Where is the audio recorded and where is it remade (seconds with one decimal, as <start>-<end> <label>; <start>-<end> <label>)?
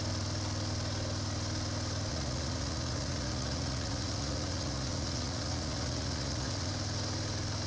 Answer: 0.0-2.1 recorded; 2.1-6.7 remade; 6.7-7.7 recorded